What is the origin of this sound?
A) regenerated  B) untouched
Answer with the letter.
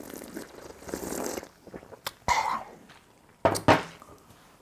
B